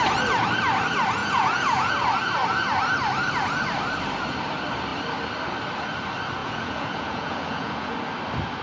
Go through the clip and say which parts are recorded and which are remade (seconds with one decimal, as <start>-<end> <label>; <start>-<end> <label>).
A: 0.0-1.2 recorded; 1.2-1.9 remade; 1.9-6.4 recorded; 6.4-7.9 remade; 7.9-8.6 recorded